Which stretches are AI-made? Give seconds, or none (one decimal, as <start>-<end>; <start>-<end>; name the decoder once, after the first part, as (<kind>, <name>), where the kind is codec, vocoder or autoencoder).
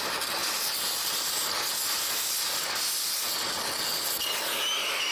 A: none